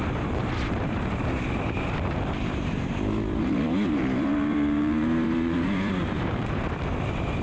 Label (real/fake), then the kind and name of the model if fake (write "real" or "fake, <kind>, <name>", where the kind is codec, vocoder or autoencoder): fake, vocoder, BigVGAN v2